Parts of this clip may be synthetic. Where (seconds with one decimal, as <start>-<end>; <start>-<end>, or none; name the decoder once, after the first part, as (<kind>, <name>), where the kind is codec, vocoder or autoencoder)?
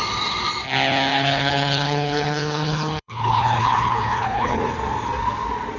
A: 1.1-4.6 (codec, HILCodec)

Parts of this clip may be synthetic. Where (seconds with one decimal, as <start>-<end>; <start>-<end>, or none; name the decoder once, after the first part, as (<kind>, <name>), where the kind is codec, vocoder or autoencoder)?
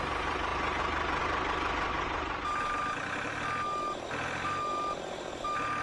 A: none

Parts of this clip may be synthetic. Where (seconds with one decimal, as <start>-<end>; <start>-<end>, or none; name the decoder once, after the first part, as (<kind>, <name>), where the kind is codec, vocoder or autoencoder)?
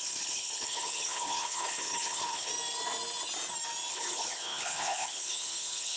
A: 0.0-2.5 (codec, HILCodec); 3.9-6.0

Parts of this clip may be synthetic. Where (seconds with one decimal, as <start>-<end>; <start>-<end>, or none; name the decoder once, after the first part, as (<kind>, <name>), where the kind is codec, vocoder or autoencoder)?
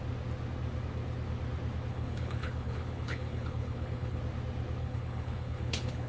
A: 1.9-4.2 (codec, HILCodec); 4.8-6.1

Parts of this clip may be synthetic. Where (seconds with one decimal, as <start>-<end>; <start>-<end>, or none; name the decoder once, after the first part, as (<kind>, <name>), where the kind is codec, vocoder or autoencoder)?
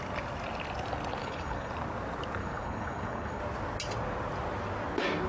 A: 1.2-1.7 (codec, HILCodec); 2.4-3.4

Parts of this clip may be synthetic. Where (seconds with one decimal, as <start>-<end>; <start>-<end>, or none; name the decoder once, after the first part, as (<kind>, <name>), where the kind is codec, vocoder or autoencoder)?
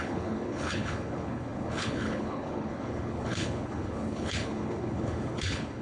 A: 0.0-5.8 (codec, HILCodec)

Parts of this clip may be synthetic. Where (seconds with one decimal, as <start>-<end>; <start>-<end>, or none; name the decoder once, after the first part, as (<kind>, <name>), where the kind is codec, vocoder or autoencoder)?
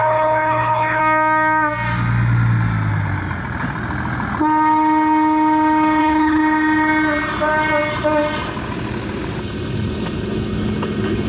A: 0.0-1.0 (codec, HILCodec); 6.0-6.4; 9.4-11.3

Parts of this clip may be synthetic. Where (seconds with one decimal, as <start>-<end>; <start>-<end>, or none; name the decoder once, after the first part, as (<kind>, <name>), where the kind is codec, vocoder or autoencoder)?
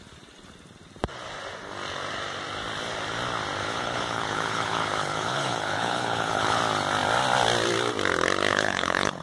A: 3.6-6.6 (codec, HILCodec); 8.5-9.2